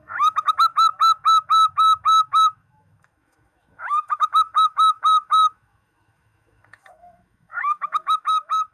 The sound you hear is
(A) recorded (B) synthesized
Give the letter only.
B